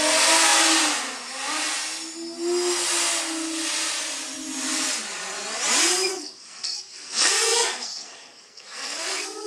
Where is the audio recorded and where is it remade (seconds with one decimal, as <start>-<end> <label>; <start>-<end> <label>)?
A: 0.0-6.1 recorded; 6.1-9.5 remade